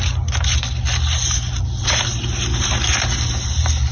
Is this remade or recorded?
recorded